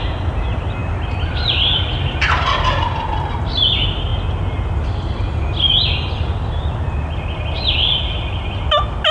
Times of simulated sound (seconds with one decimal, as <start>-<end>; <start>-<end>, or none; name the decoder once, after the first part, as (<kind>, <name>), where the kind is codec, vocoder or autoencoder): 0.8-2.1 (vocoder, BigVGAN v2)